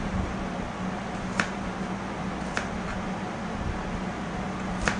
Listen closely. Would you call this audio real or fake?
real